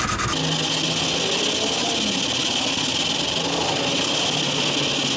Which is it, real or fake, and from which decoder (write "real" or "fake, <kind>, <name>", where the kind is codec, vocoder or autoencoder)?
real